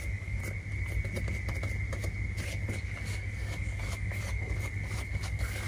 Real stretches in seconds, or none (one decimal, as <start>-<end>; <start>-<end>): 0.4-2.7